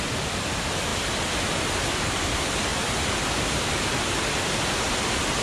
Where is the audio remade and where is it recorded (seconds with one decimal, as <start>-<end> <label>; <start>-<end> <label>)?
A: 0.0-5.4 recorded